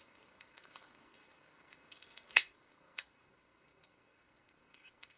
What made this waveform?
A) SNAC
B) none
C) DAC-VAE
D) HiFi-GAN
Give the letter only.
A